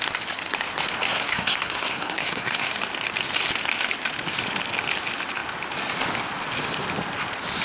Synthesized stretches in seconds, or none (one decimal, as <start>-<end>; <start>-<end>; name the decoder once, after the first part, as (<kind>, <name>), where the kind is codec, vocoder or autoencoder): 1.1-2.7 (codec, SNAC)